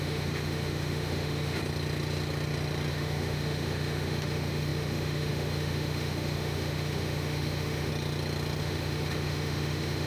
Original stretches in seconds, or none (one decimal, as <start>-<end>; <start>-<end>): 1.6-2.9; 7.9-8.6

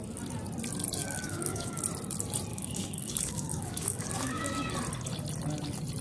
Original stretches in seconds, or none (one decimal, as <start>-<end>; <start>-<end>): 0.0-1.0; 1.8-2.5; 4.7-6.0

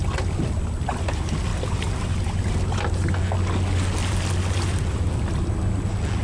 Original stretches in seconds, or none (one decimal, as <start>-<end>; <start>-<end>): 0.0-1.5; 2.5-4.0; 5.5-6.2

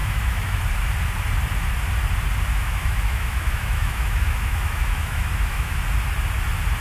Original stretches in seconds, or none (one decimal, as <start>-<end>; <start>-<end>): 0.6-2.5; 5.8-6.8